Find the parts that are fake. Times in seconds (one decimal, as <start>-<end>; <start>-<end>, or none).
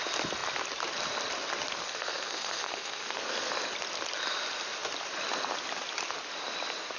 1.8-3.5